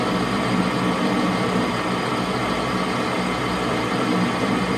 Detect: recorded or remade recorded